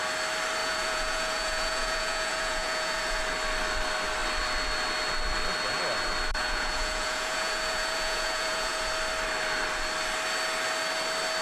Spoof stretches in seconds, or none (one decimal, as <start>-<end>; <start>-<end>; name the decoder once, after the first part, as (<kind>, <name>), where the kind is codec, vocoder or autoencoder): 0.6-3.2 (vocoder, Vocos); 6.4-8.9